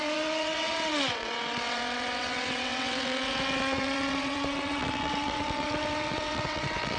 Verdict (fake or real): fake